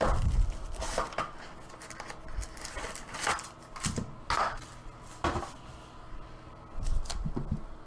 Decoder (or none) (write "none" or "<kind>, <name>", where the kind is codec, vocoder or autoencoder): none